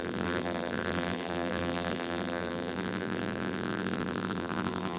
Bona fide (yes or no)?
no